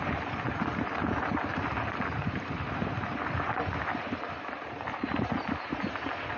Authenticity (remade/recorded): remade